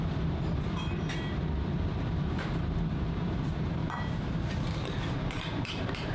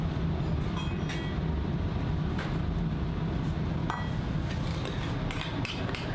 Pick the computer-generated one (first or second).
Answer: first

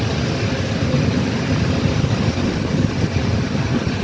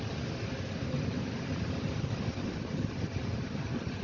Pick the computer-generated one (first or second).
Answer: second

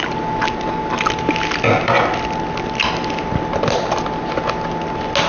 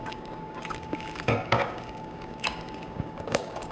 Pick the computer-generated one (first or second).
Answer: second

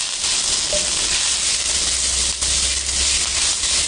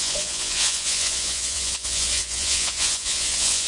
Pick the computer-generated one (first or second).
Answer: second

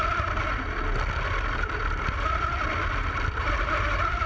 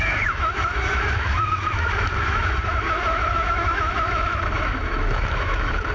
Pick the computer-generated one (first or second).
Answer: second